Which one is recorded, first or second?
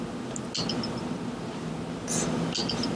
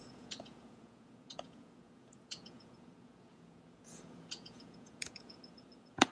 first